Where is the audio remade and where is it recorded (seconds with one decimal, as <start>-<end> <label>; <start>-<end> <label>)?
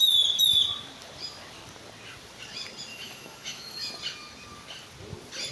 0.0-2.9 recorded; 2.9-3.9 remade; 3.9-5.5 recorded